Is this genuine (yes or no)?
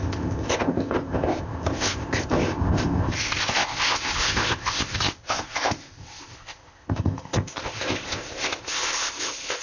no